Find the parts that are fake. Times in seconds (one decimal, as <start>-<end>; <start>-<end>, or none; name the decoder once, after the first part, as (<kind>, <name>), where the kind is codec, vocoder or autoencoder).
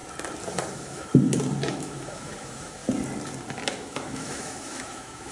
0.7-1.1 (autoencoder, DAC-VAE); 1.7-2.8; 3.7-5.3